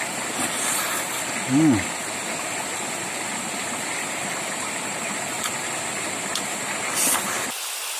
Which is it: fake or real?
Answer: real